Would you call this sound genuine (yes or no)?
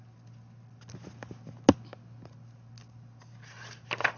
yes